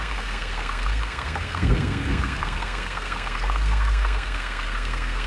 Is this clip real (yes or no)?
no